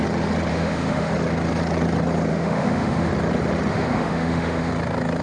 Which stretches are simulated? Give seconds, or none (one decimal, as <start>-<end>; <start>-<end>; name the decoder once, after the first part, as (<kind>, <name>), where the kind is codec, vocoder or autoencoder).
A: 0.5-1.1 (autoencoder, DAC-VAE); 2.3-3.1; 3.7-4.7

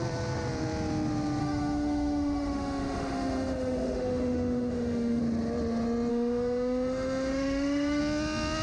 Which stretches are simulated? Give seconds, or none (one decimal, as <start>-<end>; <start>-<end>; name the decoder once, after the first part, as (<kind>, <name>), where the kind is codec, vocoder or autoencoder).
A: 1.4-5.2 (autoencoder, DAC-VAE); 6.1-8.0